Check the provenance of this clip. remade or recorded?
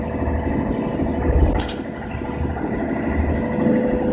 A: recorded